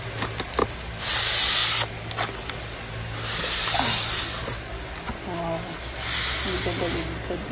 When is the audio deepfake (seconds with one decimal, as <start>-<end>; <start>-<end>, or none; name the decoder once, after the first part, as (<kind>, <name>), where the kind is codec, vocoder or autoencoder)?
none